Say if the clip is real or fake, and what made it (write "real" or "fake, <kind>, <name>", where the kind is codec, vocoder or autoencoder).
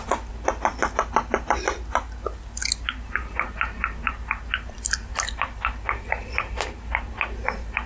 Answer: real